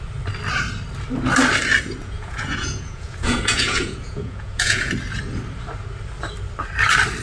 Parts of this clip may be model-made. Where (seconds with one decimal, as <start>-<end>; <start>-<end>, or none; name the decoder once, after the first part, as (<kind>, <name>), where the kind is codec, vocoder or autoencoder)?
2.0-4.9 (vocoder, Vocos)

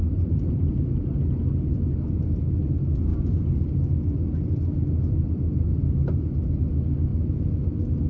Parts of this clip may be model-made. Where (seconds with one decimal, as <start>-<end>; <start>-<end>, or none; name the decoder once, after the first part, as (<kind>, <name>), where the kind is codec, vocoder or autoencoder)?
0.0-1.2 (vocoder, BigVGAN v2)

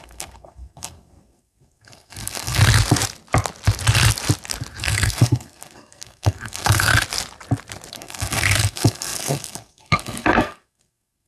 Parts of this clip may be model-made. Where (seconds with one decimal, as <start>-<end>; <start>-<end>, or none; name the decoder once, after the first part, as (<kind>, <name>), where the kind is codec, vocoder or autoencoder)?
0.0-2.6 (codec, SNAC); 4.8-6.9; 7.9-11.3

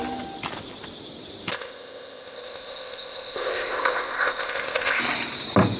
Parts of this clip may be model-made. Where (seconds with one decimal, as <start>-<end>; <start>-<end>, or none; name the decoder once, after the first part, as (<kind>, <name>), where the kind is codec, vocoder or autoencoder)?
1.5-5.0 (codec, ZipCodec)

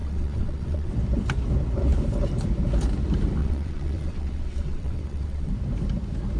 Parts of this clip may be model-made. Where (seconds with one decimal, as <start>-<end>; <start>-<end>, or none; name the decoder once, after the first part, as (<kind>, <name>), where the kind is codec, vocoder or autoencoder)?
0.0-0.9 (vocoder, WaveNeXt); 3.4-5.5